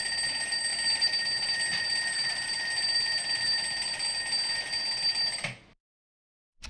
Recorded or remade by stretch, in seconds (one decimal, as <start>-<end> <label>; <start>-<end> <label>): 0.0-0.7 recorded; 0.7-4.1 remade; 4.1-6.7 recorded